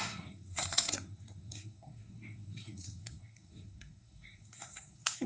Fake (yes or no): yes